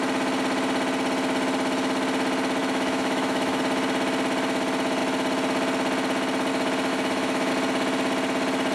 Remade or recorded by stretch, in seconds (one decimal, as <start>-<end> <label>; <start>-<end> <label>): 0.0-2.6 recorded; 2.6-3.6 remade; 3.6-6.9 recorded; 6.9-7.5 remade; 7.5-8.7 recorded